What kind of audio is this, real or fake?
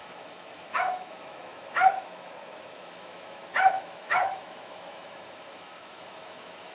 fake